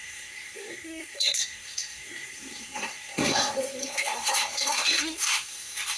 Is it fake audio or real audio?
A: fake